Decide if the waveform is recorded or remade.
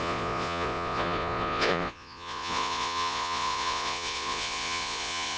remade